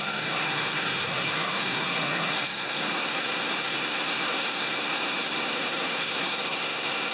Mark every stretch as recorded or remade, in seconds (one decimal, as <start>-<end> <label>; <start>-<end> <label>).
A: 0.0-7.1 remade